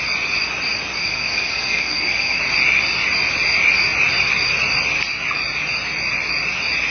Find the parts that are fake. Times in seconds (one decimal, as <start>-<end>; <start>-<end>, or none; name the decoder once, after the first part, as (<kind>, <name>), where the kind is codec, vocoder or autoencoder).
1.0-2.4 (codec, SNAC)